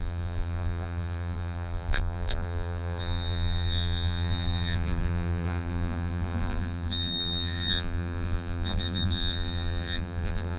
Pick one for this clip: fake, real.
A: fake